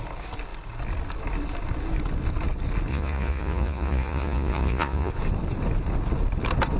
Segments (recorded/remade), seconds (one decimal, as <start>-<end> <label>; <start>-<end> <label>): 0.0-2.9 recorded; 2.9-5.1 remade; 5.1-6.8 recorded

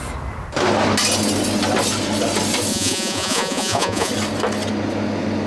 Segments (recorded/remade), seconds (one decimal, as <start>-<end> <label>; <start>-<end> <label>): 0.0-2.7 recorded; 2.7-4.1 remade; 4.1-5.5 recorded

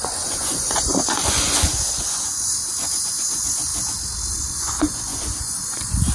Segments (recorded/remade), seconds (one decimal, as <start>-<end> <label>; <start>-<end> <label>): 0.0-3.7 remade; 3.7-4.3 recorded; 4.3-6.1 remade

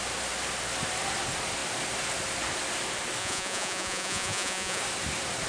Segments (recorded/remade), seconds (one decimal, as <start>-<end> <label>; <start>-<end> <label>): 0.0-3.2 recorded; 3.2-4.8 remade; 4.8-5.5 recorded